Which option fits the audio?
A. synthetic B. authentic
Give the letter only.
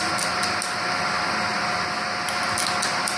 B